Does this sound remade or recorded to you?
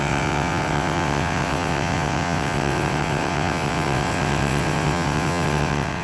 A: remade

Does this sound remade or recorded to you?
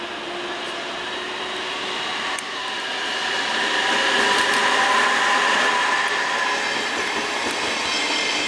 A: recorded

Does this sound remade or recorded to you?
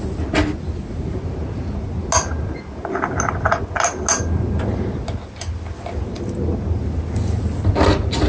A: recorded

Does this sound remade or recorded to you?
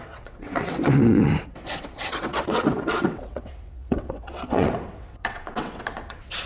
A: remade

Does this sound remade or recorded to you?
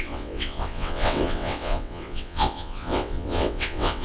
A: remade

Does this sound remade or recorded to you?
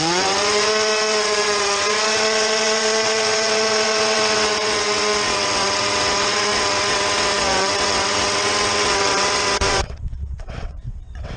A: remade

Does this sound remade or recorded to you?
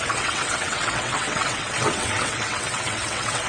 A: remade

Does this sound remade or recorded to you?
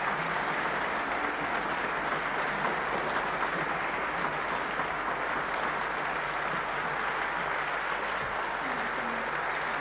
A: recorded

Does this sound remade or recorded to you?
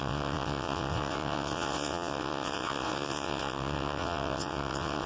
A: remade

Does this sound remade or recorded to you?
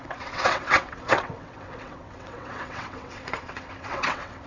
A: remade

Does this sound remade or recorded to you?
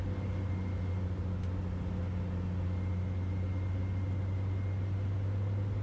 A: recorded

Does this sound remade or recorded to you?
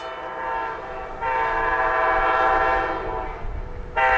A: recorded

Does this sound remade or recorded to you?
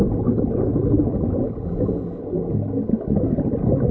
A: recorded